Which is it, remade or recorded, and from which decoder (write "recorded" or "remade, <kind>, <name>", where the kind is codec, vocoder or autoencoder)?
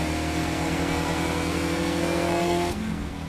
remade, codec, SNAC